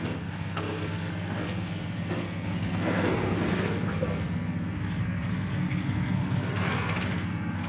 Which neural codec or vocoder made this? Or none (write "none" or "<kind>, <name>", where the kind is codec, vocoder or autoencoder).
codec, SNAC